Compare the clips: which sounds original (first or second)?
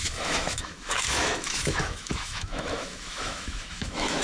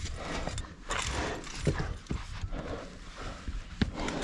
second